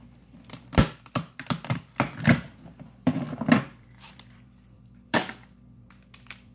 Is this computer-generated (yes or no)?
yes